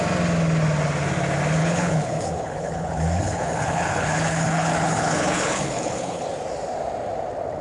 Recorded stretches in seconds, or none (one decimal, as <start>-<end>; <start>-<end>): 0.0-1.6; 6.2-7.6

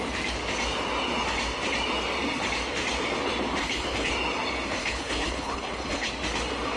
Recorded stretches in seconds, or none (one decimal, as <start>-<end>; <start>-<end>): 0.0-3.6; 4.1-4.8; 6.1-6.8

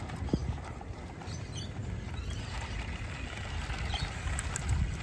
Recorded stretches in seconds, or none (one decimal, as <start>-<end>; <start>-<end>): 0.0-5.0

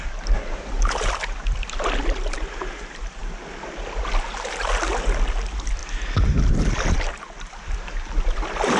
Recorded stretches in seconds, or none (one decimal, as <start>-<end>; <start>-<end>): 0.0-8.8